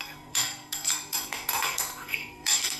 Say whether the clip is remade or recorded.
remade